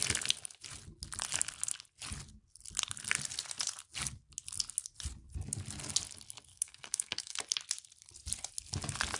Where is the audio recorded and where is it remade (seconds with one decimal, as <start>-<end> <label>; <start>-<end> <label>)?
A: 0.0-6.5 recorded; 6.5-7.4 remade; 7.4-9.2 recorded